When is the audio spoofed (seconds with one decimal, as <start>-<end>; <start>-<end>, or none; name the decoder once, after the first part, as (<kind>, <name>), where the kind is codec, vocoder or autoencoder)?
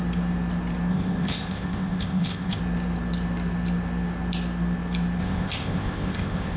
0.9-2.6 (codec, ZipCodec); 5.2-6.6